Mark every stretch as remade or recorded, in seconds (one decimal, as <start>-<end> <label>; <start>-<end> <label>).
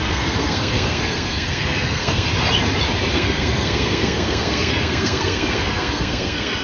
0.0-2.3 remade; 2.3-3.1 recorded; 3.1-6.6 remade